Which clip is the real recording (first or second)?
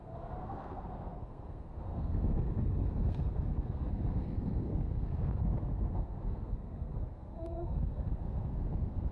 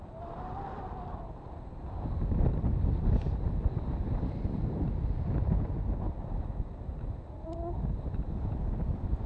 second